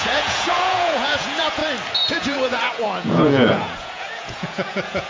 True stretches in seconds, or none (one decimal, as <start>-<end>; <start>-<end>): 1.6-2.1